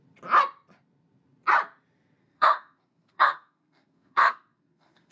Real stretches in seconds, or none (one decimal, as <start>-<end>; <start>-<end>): 0.0-2.2